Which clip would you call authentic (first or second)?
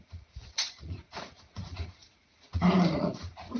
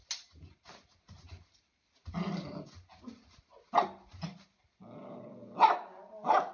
second